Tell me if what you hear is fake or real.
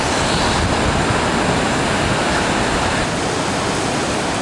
real